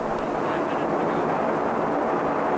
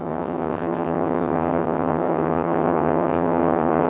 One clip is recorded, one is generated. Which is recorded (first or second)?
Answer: first